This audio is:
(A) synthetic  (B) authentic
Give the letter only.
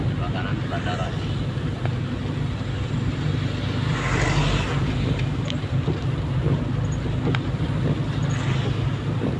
B